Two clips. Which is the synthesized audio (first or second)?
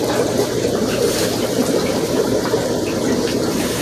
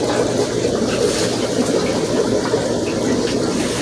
first